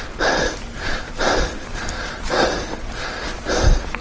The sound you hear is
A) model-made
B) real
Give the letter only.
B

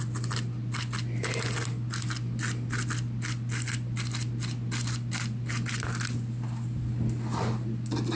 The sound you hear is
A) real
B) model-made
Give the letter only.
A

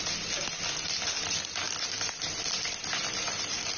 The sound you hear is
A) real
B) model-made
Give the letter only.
A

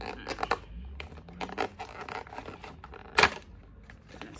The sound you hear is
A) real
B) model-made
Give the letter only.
A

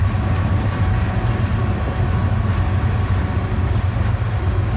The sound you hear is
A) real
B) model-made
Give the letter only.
A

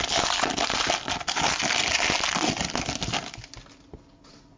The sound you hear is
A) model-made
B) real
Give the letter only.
B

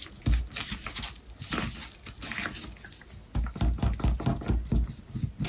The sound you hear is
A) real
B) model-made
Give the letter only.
A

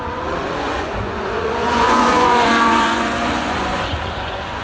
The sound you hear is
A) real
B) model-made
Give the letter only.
B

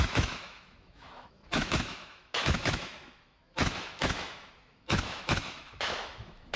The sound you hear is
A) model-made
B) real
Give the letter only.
A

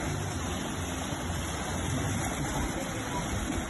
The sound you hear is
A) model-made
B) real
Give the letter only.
B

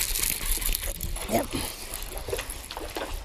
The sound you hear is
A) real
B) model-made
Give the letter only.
A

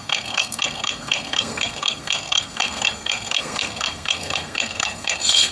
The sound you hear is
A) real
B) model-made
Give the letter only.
B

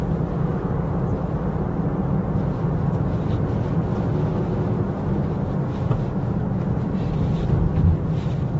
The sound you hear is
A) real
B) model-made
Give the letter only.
B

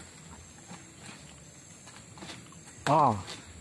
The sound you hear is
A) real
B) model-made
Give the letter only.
A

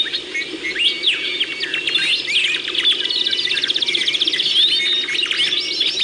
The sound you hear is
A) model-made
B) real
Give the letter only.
B